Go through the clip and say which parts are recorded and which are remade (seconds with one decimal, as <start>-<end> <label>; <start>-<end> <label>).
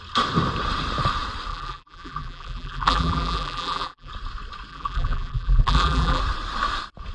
0.0-1.5 recorded; 1.5-4.1 remade; 4.1-4.7 recorded; 4.7-6.2 remade; 6.2-7.1 recorded